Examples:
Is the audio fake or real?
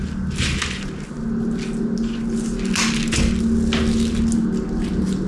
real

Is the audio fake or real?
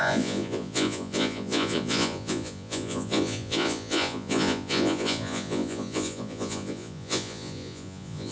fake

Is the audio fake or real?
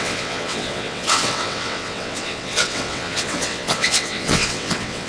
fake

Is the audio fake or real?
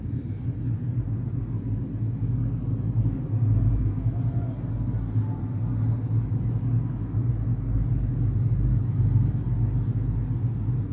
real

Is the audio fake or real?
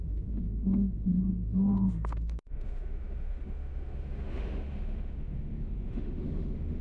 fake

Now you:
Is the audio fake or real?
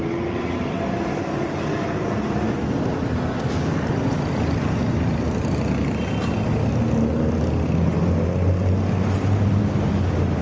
real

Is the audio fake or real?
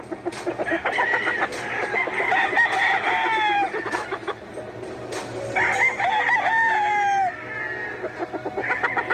real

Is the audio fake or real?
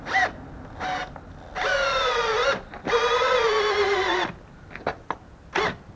real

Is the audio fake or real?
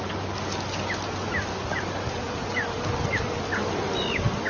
real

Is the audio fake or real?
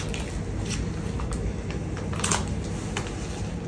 real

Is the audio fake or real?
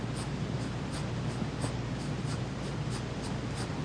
real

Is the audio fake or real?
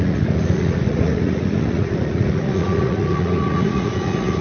fake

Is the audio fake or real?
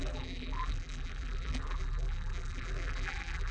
fake